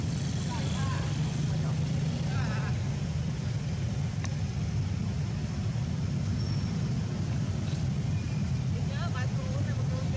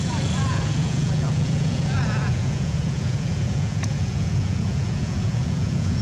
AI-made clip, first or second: second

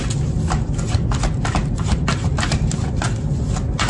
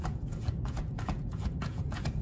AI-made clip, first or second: second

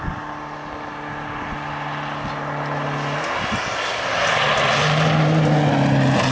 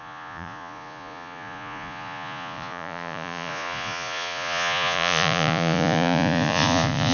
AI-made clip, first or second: second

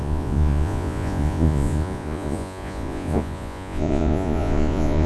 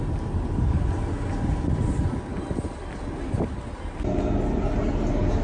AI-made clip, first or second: first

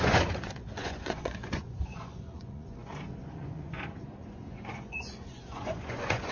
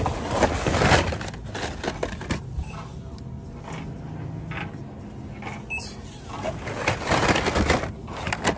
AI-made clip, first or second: first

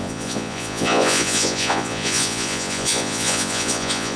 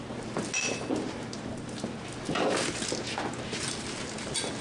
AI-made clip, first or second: first